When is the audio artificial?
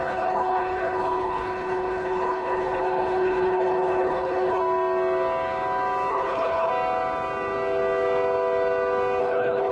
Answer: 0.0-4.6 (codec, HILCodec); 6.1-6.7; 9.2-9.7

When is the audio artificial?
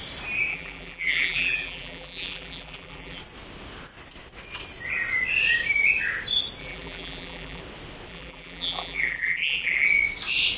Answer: 0.5-3.2 (vocoder, BigVGAN v2); 6.6-7.6; 8.1-9.9